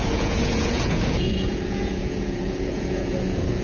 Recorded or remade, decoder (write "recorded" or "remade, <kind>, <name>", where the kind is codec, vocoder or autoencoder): remade, vocoder, Vocos